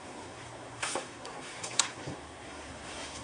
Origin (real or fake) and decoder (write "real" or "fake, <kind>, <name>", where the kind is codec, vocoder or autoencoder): fake, codec, SNAC